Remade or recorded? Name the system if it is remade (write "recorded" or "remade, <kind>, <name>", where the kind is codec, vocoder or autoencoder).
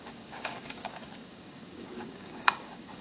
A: remade, codec, DAC